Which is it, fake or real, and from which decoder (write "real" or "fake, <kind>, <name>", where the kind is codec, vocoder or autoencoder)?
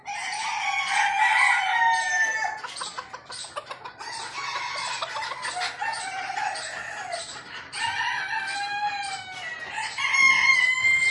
real